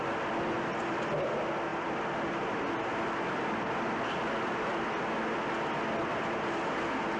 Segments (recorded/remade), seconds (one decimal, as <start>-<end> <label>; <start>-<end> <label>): 0.0-7.2 recorded